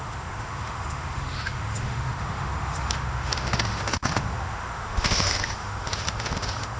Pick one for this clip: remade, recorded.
remade